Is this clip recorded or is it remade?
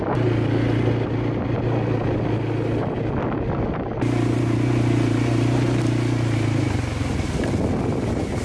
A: recorded